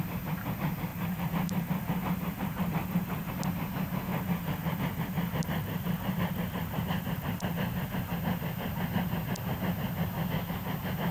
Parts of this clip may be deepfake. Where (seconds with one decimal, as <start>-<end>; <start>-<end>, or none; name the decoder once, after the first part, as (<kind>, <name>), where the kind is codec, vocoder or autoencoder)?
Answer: 0.9-3.3 (vocoder, BigVGAN v2); 4.1-8.1